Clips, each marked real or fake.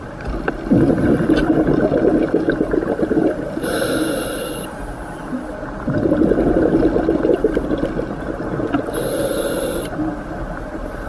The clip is real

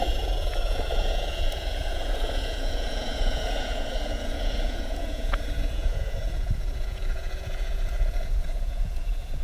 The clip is fake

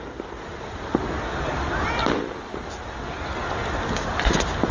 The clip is real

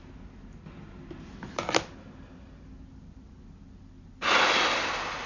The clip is real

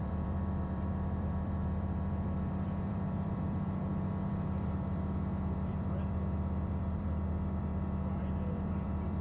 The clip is fake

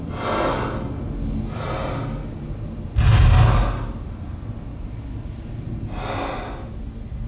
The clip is real